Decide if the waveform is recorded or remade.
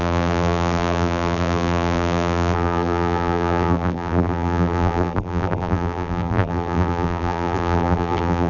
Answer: remade